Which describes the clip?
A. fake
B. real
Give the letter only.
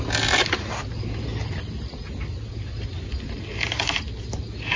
B